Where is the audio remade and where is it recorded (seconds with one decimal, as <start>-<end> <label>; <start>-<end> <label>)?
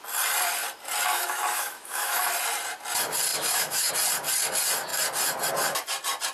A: 0.0-1.1 recorded; 1.1-2.2 remade; 2.2-3.3 recorded; 3.3-3.9 remade; 3.9-6.3 recorded